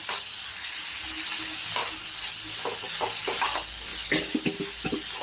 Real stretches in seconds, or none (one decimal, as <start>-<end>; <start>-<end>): 0.0-5.2